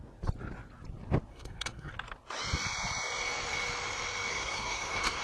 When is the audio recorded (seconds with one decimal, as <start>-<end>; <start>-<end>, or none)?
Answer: 0.0-1.3; 1.9-4.3